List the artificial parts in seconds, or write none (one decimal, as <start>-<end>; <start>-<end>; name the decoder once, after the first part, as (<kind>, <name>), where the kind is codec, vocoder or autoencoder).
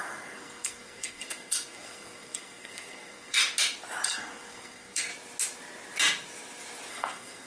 0.0-3.4 (codec, SNAC); 4.1-5.1; 6.9-7.5